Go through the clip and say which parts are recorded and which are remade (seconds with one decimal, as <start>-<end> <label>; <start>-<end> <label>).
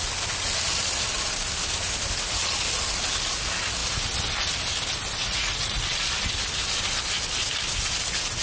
0.0-5.2 recorded; 5.2-5.8 remade; 5.8-8.4 recorded